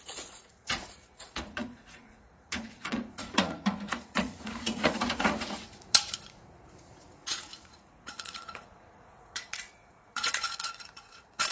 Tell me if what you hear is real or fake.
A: fake